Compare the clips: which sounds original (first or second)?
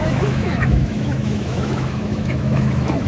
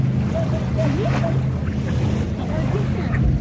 second